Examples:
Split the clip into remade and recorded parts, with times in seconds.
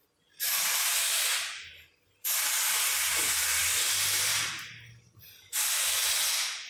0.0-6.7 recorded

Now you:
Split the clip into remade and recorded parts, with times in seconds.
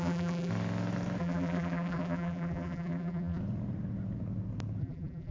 0.0-0.5 remade; 0.5-1.2 recorded; 1.2-3.4 remade; 3.4-4.8 recorded; 4.8-5.3 remade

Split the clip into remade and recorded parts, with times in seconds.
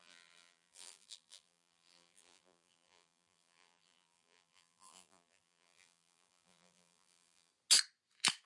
0.0-7.5 remade; 7.5-8.5 recorded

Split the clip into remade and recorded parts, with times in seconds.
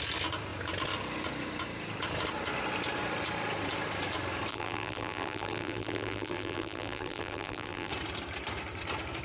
0.0-4.5 recorded; 4.5-7.9 remade; 7.9-9.2 recorded